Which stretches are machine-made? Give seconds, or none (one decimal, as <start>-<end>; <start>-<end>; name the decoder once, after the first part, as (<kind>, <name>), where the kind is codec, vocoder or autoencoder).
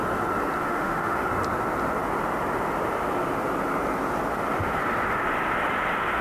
0.6-1.3 (autoencoder, DAC-VAE)